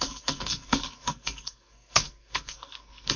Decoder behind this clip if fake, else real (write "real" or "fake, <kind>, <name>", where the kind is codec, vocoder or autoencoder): fake, codec, SNAC